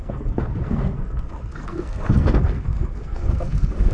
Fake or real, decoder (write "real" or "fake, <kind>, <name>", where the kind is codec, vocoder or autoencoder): fake, codec, SNAC